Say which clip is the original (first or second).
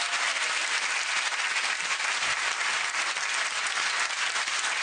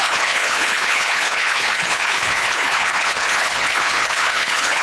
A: first